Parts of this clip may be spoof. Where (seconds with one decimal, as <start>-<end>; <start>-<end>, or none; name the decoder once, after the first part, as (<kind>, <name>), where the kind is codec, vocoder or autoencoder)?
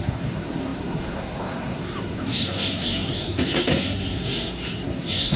0.0-5.4 (codec, SNAC)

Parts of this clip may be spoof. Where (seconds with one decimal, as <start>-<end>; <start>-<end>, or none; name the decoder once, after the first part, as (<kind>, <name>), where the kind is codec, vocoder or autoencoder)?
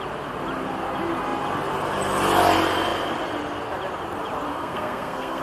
4.5-5.4 (codec, SNAC)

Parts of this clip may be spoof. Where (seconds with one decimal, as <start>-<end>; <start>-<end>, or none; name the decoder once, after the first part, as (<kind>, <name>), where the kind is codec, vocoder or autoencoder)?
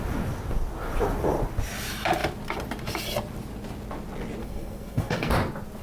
4.4-5.3 (codec, SNAC)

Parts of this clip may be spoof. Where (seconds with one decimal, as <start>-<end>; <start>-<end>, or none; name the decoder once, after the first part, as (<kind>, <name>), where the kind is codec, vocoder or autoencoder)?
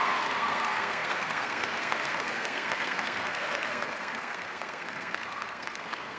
0.0-6.2 (codec, SNAC)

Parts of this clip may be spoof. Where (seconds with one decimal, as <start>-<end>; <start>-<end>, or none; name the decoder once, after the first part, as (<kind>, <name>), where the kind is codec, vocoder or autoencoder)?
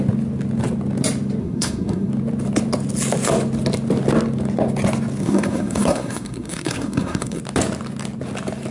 1.4-2.1 (codec, SNAC); 5.2-7.4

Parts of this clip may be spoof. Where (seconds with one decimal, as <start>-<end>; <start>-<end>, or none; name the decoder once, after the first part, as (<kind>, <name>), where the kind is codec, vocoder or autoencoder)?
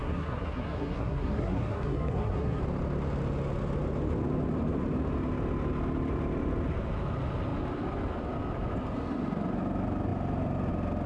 0.0-2.6 (codec, SNAC)